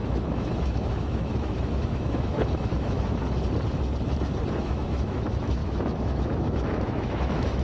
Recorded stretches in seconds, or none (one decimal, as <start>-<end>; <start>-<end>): 3.2-4.5